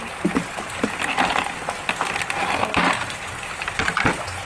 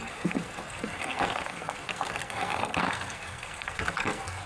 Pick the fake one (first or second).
second